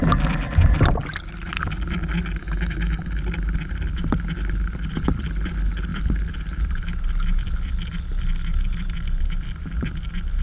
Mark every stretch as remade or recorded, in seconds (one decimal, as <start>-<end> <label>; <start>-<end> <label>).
0.0-2.4 recorded; 2.4-3.2 remade; 3.2-10.4 recorded